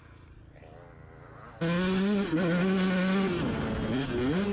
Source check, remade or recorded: recorded